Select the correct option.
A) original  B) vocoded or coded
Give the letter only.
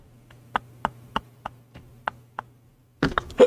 A